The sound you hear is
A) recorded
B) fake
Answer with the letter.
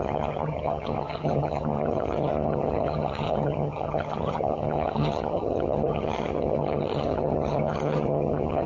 B